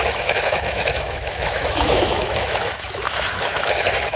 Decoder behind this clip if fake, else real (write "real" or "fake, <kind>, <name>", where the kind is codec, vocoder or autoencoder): fake, autoencoder, DAC-VAE